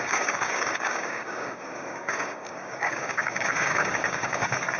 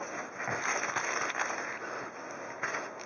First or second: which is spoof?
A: first